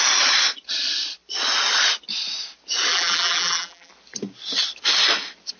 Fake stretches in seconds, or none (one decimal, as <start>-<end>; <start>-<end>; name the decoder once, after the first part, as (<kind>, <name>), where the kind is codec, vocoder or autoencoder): 2.9-3.9 (vocoder, BigVGAN v2)